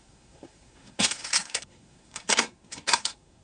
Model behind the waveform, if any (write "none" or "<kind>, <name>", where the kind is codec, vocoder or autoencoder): codec, SNAC